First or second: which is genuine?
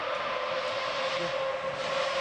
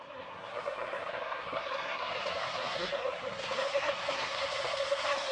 first